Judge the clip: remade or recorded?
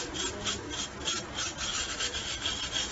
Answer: recorded